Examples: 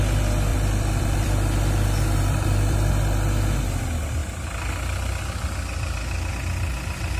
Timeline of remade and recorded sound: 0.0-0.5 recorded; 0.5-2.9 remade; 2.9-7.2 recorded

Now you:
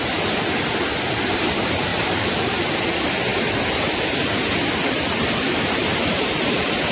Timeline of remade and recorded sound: 0.0-1.9 recorded; 1.9-2.7 remade; 2.7-3.3 recorded; 3.3-6.9 remade

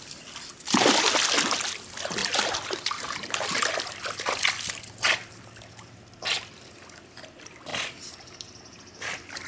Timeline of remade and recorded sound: 0.0-2.2 recorded; 2.2-3.8 remade; 3.8-9.5 recorded

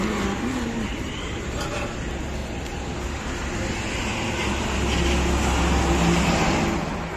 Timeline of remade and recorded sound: 0.0-0.9 recorded; 0.9-1.6 remade; 1.6-2.4 recorded; 2.4-3.2 remade; 3.2-7.2 recorded

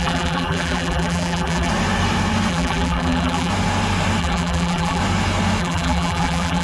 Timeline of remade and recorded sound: 0.0-1.7 remade; 1.7-2.5 recorded; 2.5-3.5 remade; 3.5-4.2 recorded; 4.2-5.0 remade; 5.0-5.6 recorded; 5.6-6.6 remade